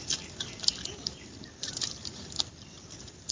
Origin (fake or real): fake